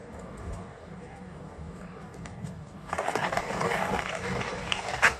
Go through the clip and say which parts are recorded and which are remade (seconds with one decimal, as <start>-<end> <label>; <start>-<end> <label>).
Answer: 0.0-5.2 remade